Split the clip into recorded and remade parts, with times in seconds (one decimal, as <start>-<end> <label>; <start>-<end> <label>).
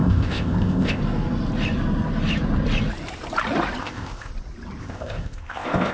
0.0-1.0 remade; 1.0-3.8 recorded; 3.8-4.3 remade; 4.3-4.8 recorded; 4.8-5.9 remade